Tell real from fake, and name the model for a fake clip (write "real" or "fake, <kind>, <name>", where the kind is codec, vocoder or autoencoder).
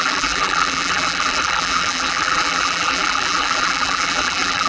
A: fake, vocoder, BigVGAN v2